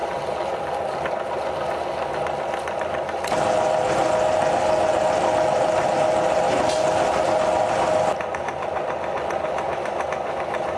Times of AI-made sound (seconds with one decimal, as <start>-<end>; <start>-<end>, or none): none